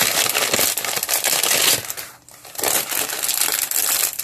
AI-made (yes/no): no